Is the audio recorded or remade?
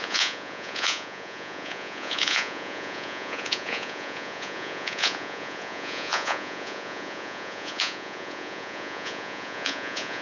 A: remade